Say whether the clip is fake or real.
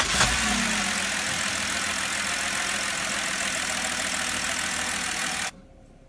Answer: real